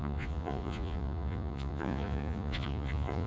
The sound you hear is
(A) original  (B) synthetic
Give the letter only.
B